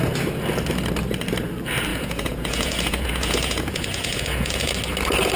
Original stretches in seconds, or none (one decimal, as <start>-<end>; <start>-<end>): 0.0-1.9; 4.7-5.4

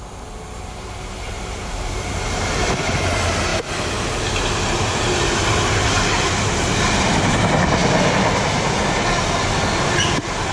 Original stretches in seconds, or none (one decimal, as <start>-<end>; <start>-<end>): 0.0-10.5

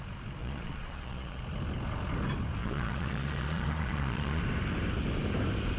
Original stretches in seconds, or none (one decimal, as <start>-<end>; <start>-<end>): 0.0-0.4; 1.4-2.6; 4.4-5.8

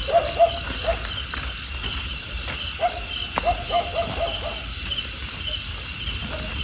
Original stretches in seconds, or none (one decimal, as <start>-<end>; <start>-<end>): 0.0-6.6

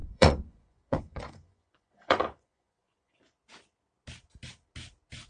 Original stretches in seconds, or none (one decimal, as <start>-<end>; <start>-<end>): 3.2-5.3

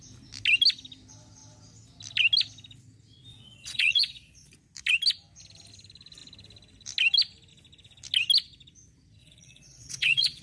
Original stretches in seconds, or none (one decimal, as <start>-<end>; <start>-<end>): 0.0-3.3; 4.5-9.2

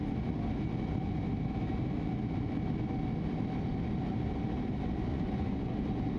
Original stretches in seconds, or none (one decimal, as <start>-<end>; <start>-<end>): 0.0-5.1; 5.7-6.2